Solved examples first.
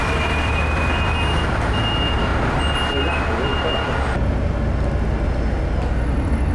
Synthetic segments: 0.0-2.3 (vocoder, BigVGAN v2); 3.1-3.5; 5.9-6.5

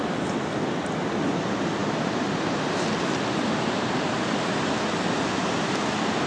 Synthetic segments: none

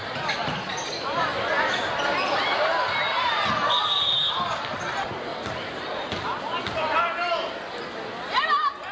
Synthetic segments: 5.3-6.4 (vocoder, BigVGAN v2)